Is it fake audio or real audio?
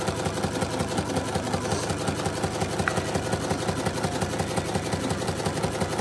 real